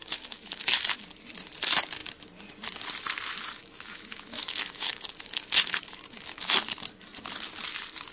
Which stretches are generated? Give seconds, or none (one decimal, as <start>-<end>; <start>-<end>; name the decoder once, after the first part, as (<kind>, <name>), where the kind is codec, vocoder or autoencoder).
0.0-1.0 (autoencoder, DAC-VAE); 3.6-6.6